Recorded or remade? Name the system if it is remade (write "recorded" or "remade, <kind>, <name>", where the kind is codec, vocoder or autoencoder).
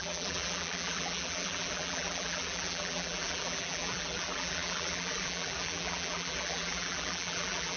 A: remade, vocoder, BigVGAN v2